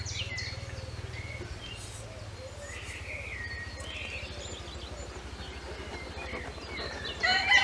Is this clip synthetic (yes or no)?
no